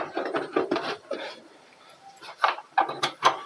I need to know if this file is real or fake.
fake